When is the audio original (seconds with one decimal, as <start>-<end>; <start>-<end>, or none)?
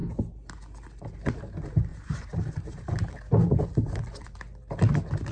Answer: 0.0-1.9; 2.9-5.3